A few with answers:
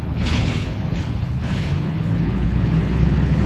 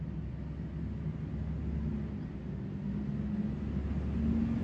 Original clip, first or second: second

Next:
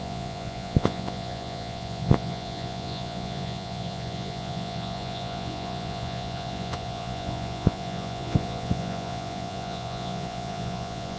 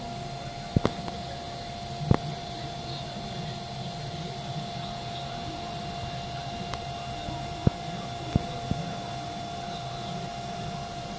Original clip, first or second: second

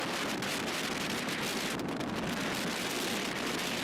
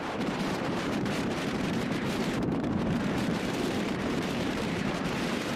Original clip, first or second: first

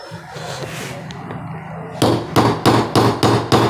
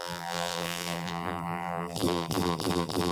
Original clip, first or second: first